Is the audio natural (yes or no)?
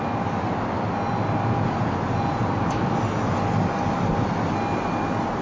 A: yes